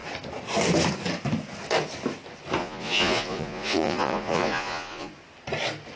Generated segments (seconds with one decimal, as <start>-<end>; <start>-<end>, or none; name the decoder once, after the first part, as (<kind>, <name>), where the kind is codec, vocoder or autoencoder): 2.6-5.1 (vocoder, Vocos)